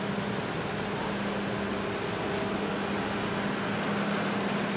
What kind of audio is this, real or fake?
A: real